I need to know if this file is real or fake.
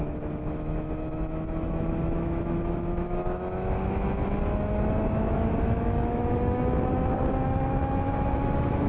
fake